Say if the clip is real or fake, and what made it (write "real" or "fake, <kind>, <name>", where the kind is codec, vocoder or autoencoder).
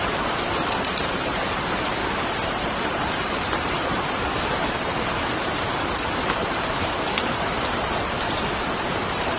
fake, vocoder, BigVGAN v2